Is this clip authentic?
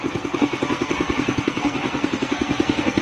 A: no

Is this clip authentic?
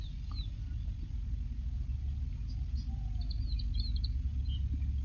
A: yes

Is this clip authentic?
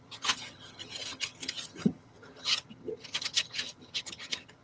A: no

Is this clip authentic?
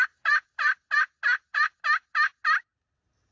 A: yes